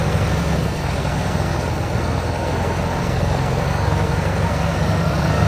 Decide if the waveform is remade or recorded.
remade